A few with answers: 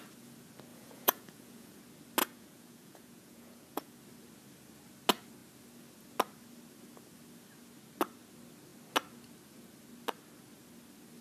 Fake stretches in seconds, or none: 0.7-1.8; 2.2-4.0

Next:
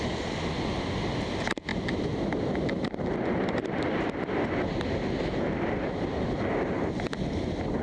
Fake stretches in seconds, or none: none

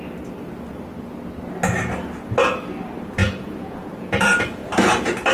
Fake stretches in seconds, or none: 3.2-4.1

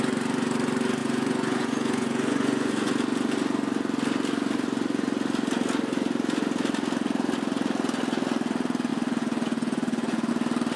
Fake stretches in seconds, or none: 1.0-2.9; 8.9-10.3

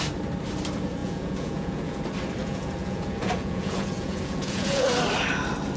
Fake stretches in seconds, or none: 1.0-2.0; 2.4-4.9